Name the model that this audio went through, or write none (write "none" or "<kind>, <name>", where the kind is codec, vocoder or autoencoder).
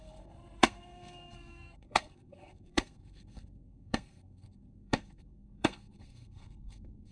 codec, SNAC